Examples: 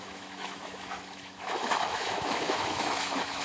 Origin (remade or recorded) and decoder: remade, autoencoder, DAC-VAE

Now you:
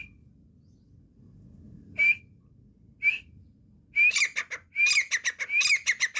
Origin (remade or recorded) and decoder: recorded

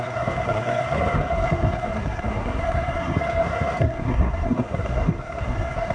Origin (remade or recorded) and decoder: remade, codec, SNAC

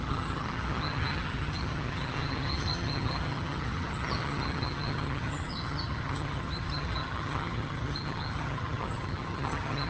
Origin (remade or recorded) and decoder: remade, vocoder, HiFi-GAN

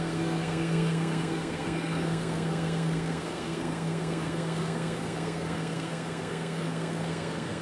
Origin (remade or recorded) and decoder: remade, codec, SNAC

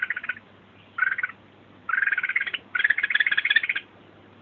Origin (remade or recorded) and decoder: recorded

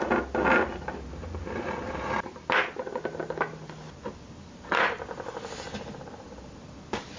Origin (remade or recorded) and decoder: recorded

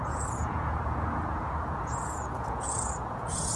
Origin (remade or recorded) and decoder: remade, vocoder, Vocos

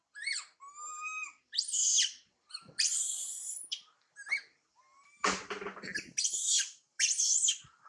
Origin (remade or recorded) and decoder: remade, vocoder, BigVGAN v2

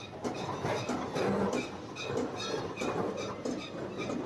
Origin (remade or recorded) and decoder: recorded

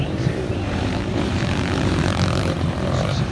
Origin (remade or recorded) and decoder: remade, vocoder, BigVGAN v2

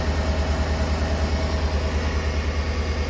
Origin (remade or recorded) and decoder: recorded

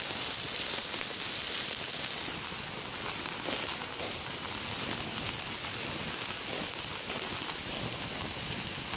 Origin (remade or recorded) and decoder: recorded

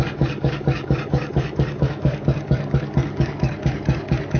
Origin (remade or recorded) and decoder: remade, codec, DAC